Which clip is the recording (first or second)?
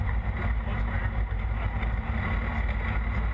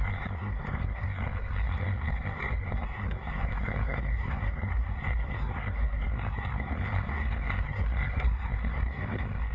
first